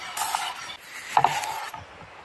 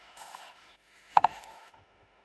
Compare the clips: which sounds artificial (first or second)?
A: second